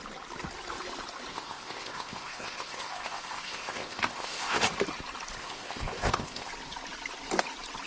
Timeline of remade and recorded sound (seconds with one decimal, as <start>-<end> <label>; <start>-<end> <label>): 0.0-1.3 recorded; 1.3-4.6 remade; 4.6-5.4 recorded; 5.4-6.5 remade; 6.5-7.9 recorded